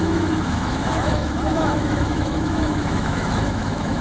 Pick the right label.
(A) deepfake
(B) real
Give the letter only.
A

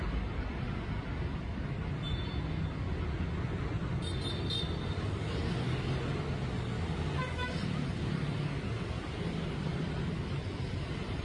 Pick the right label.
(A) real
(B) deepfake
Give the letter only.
A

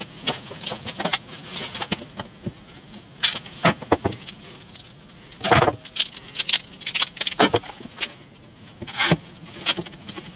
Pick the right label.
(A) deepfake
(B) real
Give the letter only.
B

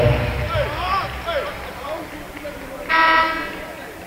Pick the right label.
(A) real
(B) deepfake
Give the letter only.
A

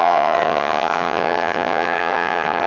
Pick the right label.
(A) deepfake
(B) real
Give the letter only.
A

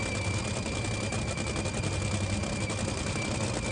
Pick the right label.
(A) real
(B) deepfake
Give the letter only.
A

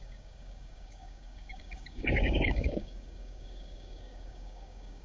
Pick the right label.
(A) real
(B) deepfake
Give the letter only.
B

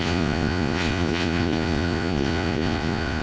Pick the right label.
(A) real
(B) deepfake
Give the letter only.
B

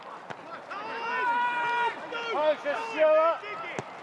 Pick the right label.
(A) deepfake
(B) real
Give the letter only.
B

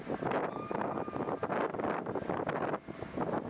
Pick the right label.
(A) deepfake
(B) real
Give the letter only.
B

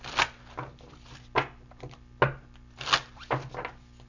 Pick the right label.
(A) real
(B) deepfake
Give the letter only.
A